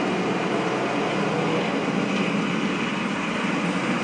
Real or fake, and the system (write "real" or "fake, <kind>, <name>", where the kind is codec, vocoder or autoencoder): real